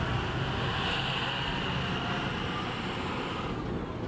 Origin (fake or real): real